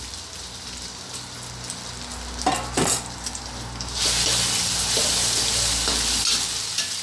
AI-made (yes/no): no